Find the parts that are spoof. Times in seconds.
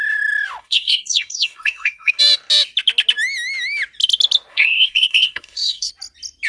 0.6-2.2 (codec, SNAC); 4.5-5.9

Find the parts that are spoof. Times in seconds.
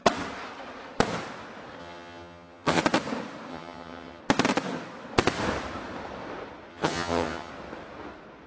1.8-2.8 (vocoder, HiFi-GAN); 3.5-4.2; 6.7-7.5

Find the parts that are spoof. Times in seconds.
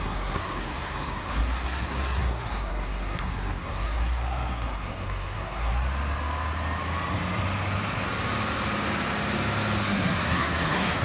0.0-5.7 (codec, SNAC); 9.8-11.0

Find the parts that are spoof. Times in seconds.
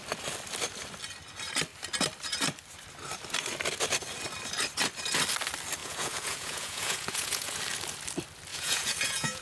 5.8-7.6 (vocoder, Vocos); 8.5-9.4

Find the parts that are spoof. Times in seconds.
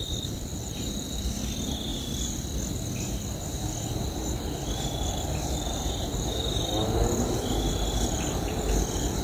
none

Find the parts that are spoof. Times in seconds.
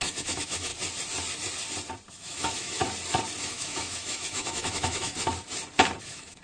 0.0-0.7 (autoencoder, DAC-VAE); 2.1-2.8; 3.4-5.1; 6.0-6.4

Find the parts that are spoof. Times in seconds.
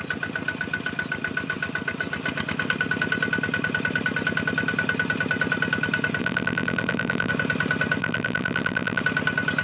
6.2-7.3 (vocoder, BigVGAN v2); 8.0-9.0